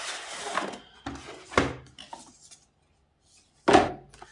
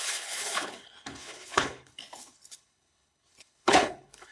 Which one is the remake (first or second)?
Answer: second